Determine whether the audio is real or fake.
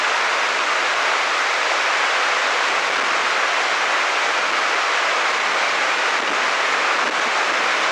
real